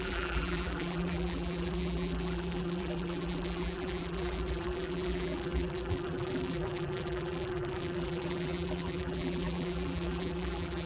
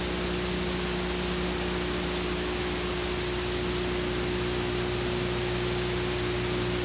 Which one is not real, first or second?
first